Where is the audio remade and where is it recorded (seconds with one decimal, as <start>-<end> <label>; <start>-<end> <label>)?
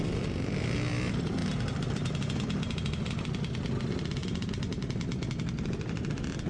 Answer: 0.0-6.5 recorded